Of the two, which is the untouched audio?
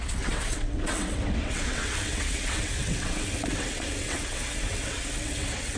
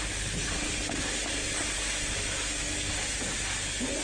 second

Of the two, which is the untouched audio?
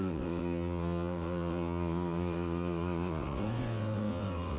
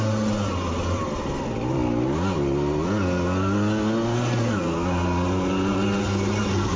second